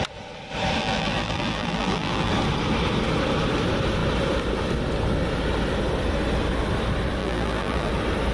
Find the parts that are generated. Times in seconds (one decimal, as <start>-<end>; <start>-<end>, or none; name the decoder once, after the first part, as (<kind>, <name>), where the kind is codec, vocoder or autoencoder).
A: 0.8-2.3 (vocoder, BigVGAN v2); 7.2-7.9